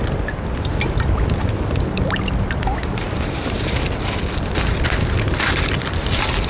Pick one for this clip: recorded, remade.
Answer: recorded